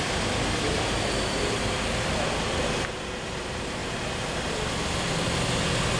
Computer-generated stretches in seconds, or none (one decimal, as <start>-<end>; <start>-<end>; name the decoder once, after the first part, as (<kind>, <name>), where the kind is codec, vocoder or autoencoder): none